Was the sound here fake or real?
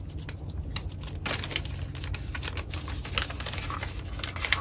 real